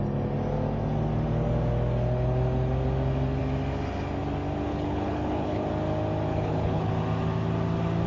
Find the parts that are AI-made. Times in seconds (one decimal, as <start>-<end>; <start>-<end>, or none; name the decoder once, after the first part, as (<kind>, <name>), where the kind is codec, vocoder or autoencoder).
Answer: 4.7-5.7 (codec, HILCodec); 6.3-6.9